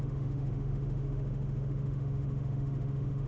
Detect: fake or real fake